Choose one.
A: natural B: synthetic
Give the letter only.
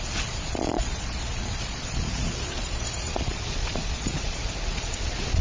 B